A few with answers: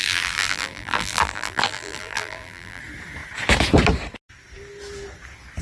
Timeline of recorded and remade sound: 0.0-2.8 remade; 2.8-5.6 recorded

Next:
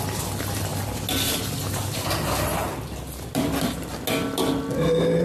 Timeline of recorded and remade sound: 0.0-5.2 recorded

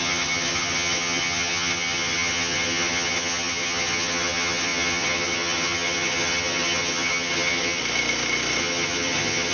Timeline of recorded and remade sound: 0.0-7.8 remade; 7.8-8.6 recorded; 8.6-9.5 remade

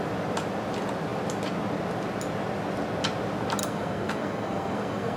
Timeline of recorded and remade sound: 0.0-3.6 recorded; 3.6-5.2 remade

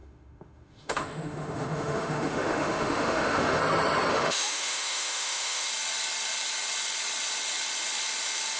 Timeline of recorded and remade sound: 0.0-3.6 remade; 3.6-4.1 recorded; 4.1-5.7 remade; 5.7-8.6 recorded

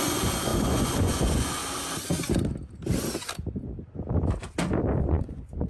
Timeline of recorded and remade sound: 0.0-1.6 remade; 1.6-5.0 recorded; 5.0-5.7 remade